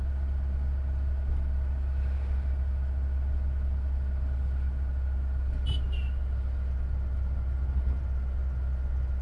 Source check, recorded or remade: recorded